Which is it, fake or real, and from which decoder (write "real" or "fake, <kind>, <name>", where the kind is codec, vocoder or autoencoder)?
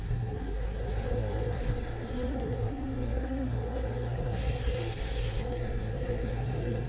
fake, codec, SNAC